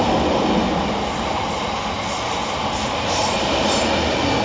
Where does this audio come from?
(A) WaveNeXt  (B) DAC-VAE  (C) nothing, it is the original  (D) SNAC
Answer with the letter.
C